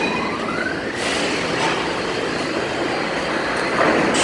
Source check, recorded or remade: recorded